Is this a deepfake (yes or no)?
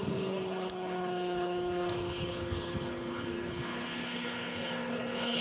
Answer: yes